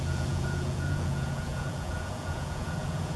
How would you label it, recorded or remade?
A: remade